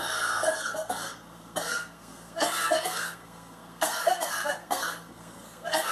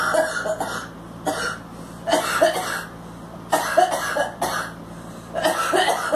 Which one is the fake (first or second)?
first